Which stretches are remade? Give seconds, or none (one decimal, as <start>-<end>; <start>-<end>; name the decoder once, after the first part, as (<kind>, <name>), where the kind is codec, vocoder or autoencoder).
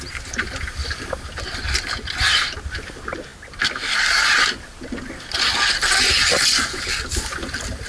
none